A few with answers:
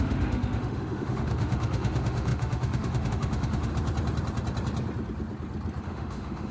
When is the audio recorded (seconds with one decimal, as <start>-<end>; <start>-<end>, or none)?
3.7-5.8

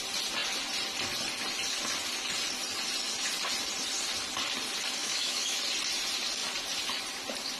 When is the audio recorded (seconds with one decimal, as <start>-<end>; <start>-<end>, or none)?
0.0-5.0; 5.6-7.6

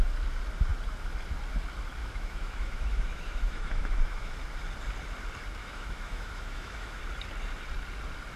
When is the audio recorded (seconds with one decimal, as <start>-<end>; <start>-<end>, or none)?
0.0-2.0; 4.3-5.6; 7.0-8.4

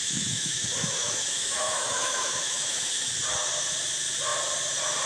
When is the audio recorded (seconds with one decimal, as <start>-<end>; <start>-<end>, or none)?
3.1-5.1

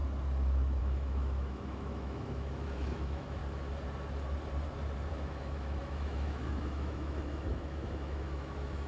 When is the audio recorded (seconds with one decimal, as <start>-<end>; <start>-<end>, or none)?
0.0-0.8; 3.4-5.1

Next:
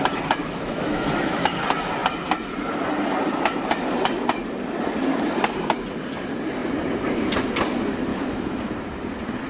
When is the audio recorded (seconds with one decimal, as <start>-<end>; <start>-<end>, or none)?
0.0-0.4; 1.6-8.1; 8.7-9.5

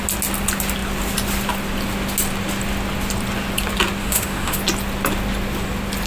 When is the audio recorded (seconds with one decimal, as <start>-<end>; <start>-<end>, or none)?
0.0-4.0; 4.6-6.1

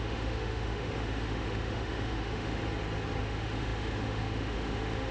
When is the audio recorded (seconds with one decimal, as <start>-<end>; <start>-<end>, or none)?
2.6-3.2